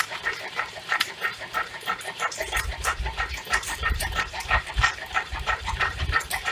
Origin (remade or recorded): remade